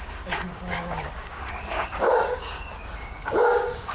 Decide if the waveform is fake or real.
fake